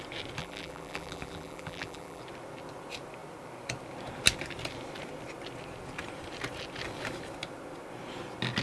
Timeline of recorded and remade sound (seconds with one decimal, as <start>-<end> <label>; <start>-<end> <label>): 0.0-0.4 recorded; 0.4-2.2 remade; 2.2-8.6 recorded